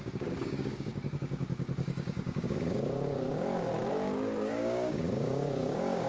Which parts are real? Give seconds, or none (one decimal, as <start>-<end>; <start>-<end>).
none